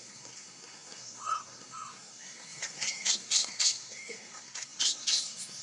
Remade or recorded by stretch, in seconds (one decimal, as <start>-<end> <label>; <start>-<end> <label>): 0.0-5.6 remade

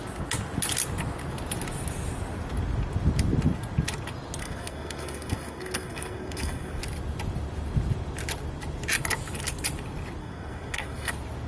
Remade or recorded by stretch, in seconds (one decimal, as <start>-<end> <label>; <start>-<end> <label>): 0.0-4.4 recorded; 4.4-6.8 remade; 6.8-10.2 recorded; 10.2-11.1 remade; 11.1-11.5 recorded

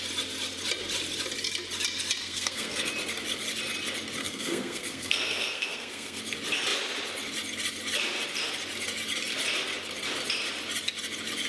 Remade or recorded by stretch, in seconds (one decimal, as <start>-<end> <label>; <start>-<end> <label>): 0.0-2.2 recorded; 2.2-2.9 remade; 2.9-4.2 recorded; 4.2-6.2 remade; 6.2-11.5 recorded

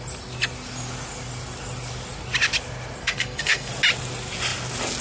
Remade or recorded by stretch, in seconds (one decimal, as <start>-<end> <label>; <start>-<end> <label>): 0.0-3.0 recorded; 3.0-3.7 remade; 3.7-5.0 recorded

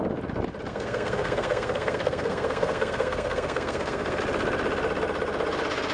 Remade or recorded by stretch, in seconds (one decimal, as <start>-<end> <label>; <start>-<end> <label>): 0.0-0.7 recorded; 0.7-4.2 remade; 4.2-5.9 recorded

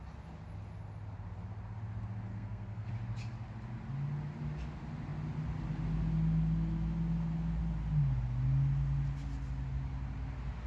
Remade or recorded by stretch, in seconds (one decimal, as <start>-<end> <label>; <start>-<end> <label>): 0.0-2.3 recorded; 2.3-2.9 remade; 2.9-10.7 recorded

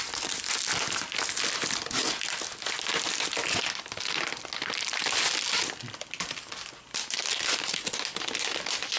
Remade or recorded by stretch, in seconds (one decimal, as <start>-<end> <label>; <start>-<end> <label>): 0.0-9.0 recorded